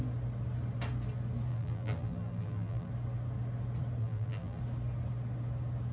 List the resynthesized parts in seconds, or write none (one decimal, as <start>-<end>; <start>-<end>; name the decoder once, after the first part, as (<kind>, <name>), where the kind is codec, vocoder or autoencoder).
1.5-2.9 (vocoder, BigVGAN v2); 4.0-4.6